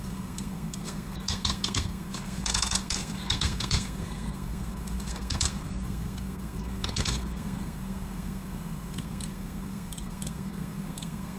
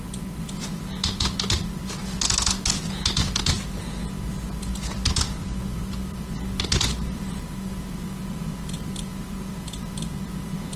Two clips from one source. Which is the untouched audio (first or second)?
second